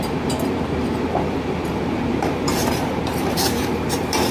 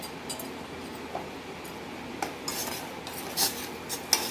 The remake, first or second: first